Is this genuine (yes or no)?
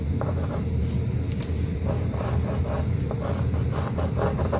yes